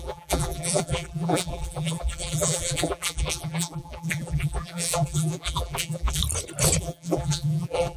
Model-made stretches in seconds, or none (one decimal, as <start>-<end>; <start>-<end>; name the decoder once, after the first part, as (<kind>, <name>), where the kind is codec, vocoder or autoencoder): 0.0-6.2 (vocoder, BigVGAN v2); 6.8-8.0